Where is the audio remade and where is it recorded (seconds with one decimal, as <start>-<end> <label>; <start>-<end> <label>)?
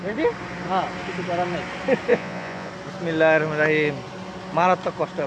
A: 0.0-2.1 recorded; 2.1-2.7 remade; 2.7-5.3 recorded